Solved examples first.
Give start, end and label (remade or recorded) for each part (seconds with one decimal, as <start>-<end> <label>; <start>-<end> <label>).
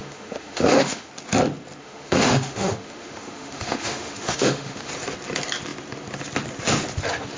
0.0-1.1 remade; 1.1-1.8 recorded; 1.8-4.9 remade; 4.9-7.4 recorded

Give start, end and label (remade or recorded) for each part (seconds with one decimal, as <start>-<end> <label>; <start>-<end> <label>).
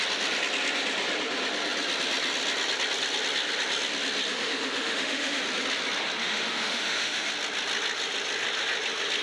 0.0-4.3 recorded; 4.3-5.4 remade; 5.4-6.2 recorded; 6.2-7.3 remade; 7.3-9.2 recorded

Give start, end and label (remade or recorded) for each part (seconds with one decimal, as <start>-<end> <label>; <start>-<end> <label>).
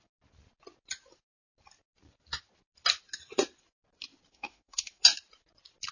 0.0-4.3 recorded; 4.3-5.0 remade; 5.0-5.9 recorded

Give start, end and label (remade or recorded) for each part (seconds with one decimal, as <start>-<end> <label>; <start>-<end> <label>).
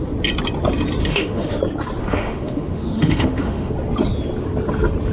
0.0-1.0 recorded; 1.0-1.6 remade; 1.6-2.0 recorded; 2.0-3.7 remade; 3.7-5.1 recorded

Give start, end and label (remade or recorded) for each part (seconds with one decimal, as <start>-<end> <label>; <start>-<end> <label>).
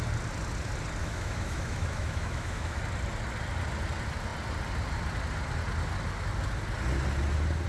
0.0-1.0 recorded; 1.0-2.8 remade; 2.8-7.7 recorded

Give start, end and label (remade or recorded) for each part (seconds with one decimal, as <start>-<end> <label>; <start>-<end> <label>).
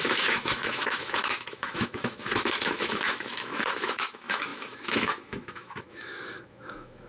0.0-7.1 remade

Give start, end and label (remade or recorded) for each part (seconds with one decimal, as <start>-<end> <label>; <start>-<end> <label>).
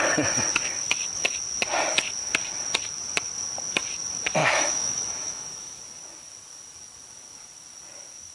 0.0-4.4 recorded; 4.4-5.8 remade; 5.8-8.3 recorded